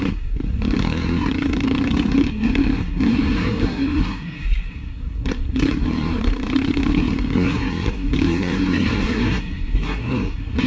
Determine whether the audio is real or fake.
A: fake